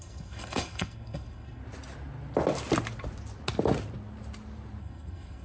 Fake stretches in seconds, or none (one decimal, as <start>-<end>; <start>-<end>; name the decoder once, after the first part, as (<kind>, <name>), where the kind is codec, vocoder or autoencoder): 0.0-1.6 (codec, SNAC); 4.8-5.4